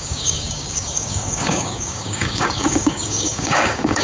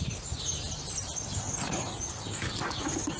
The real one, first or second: second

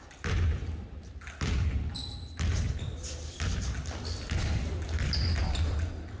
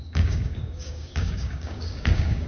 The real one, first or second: first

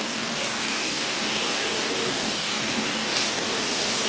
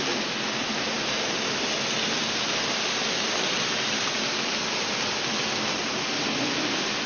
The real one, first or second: second